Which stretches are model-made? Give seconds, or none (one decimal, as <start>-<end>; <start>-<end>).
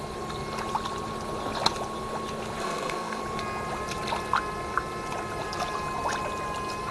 2.6-3.2